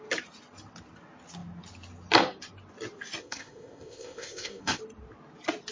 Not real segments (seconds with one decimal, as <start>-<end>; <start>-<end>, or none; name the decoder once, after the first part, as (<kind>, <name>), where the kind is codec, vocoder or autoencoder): 3.2-4.8 (codec, ZipCodec)